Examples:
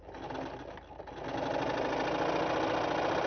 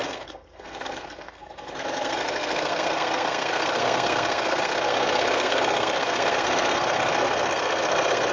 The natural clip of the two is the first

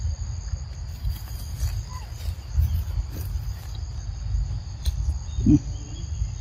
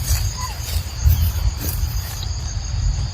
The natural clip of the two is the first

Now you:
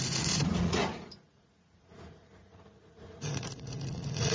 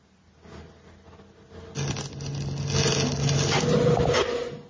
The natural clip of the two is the second